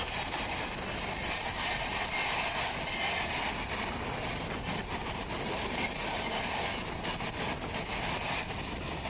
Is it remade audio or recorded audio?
recorded